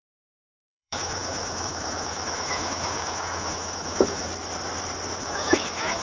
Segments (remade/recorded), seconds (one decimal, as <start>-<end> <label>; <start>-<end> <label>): 0.0-4.3 remade; 4.3-5.2 recorded; 5.2-6.0 remade